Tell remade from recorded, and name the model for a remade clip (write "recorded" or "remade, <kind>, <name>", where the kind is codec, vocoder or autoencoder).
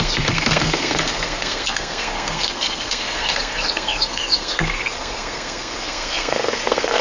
remade, codec, SNAC